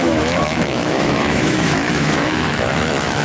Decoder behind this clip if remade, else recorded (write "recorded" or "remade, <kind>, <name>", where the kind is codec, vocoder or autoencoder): remade, autoencoder, DAC-VAE